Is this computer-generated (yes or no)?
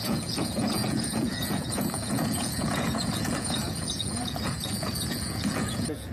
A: yes